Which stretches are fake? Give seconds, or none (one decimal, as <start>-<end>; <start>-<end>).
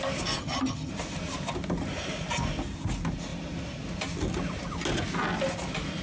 0.4-0.9